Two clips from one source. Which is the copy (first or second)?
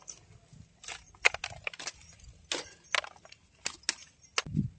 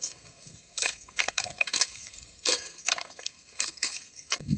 second